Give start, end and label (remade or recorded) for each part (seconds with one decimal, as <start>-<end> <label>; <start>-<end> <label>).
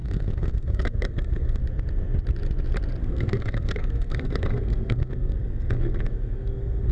0.0-1.6 remade; 1.6-3.0 recorded; 3.0-6.9 remade